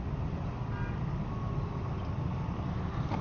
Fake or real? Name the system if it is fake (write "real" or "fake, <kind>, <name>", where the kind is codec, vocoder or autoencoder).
real